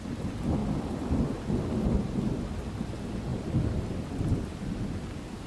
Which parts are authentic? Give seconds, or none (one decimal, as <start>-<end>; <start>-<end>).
0.0-0.6; 2.4-3.3; 4.9-5.5